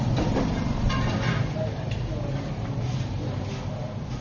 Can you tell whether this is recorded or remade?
recorded